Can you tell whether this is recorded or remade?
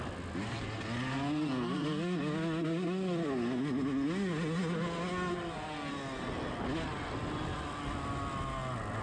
recorded